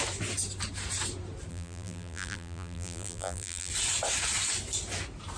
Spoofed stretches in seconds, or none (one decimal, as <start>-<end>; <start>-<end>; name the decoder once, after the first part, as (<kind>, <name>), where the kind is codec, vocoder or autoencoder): 1.5-3.7 (vocoder, BigVGAN v2)